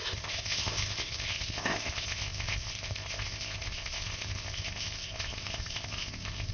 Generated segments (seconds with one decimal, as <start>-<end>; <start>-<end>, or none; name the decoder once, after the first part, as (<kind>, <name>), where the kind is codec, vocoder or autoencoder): 0.0-6.5 (codec, ZipCodec)